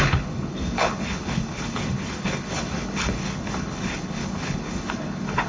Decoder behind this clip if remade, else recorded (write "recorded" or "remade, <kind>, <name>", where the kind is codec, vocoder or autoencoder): remade, codec, HILCodec